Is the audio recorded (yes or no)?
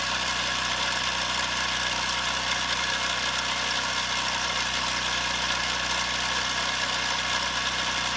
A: yes